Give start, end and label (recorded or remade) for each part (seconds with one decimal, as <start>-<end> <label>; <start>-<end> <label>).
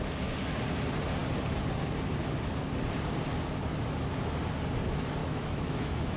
0.0-5.2 recorded; 5.2-6.2 remade